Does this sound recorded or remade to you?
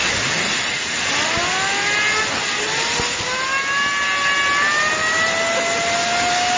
recorded